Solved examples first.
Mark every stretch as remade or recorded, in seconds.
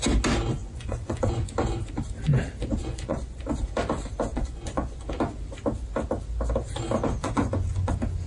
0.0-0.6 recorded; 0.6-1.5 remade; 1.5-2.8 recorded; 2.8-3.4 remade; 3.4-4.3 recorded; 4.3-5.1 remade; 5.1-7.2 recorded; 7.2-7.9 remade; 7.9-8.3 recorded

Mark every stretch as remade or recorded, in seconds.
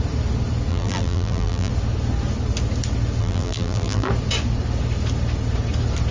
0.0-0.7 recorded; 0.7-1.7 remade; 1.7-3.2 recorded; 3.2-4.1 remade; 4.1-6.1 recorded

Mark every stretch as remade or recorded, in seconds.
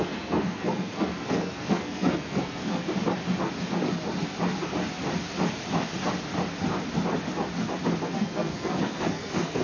0.0-2.9 remade; 2.9-8.0 recorded; 8.0-9.6 remade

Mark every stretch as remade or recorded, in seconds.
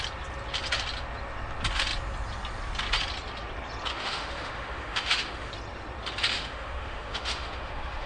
0.0-3.9 recorded; 3.9-5.5 remade; 5.5-6.3 recorded; 6.3-8.1 remade